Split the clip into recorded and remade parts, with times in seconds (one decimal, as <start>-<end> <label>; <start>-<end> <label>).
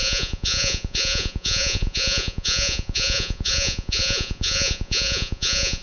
0.0-5.8 remade